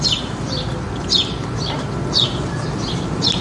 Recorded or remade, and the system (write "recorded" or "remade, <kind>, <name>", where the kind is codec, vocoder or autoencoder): remade, vocoder, BigVGAN v2